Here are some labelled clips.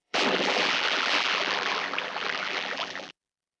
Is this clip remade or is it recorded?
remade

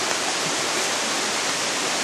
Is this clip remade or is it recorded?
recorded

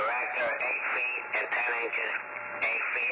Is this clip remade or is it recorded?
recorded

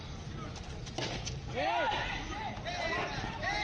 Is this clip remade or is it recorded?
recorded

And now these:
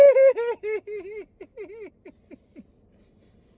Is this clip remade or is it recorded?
recorded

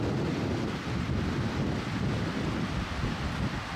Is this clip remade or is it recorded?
recorded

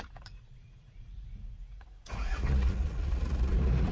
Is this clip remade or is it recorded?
remade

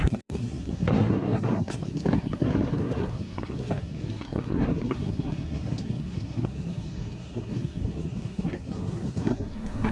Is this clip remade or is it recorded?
remade